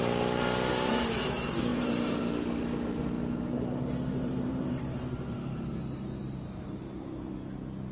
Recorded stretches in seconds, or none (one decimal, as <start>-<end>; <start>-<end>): 0.0-1.7; 2.2-4.1; 5.7-7.9